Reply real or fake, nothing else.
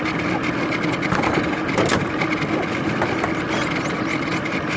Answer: real